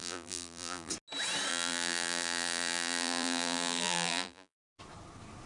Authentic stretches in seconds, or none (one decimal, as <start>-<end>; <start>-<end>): 0.9-1.5; 4.8-5.5